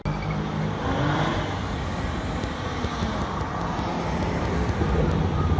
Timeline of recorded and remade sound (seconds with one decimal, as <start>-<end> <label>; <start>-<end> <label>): 0.0-5.6 recorded